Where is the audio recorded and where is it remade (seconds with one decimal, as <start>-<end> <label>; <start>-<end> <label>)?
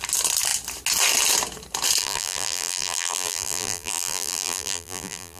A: 0.0-2.0 recorded; 2.0-5.4 remade